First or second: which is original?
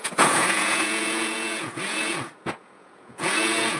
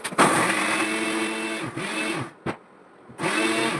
second